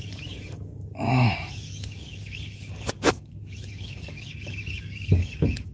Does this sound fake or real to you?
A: fake